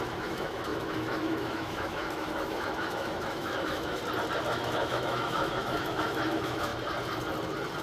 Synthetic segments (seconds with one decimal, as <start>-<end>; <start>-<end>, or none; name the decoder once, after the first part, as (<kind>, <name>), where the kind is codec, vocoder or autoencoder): 0.0-4.0 (autoencoder, DAC-VAE); 4.5-6.7